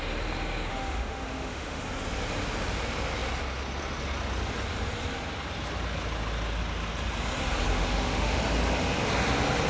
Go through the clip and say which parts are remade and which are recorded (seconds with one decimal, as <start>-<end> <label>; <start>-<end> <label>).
0.0-0.7 recorded; 0.7-1.8 remade; 1.8-7.7 recorded; 7.7-8.4 remade; 8.4-9.7 recorded

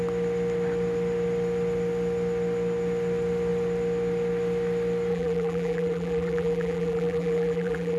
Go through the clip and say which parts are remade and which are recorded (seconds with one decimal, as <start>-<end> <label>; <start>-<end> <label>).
0.0-5.1 recorded; 5.1-8.0 remade

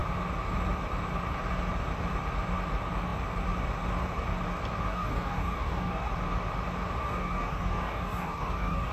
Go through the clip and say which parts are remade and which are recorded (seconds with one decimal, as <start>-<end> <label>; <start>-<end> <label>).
0.0-4.9 recorded; 4.9-6.1 remade; 6.1-7.0 recorded; 7.0-8.9 remade